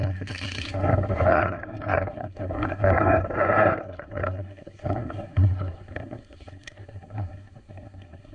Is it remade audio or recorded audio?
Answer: remade